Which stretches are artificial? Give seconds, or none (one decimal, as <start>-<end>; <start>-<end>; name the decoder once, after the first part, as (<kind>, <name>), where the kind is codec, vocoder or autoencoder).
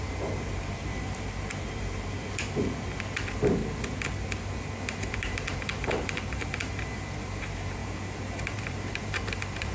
0.0-3.6 (vocoder, BigVGAN v2); 5.1-7.8; 8.5-9.7